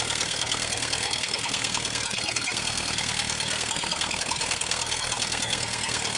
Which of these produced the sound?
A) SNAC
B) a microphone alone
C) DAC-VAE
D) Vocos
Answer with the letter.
A